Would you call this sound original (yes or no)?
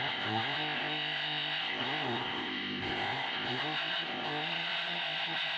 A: no